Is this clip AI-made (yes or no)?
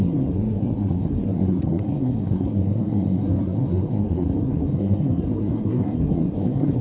yes